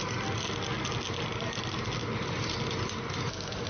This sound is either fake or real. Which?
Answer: real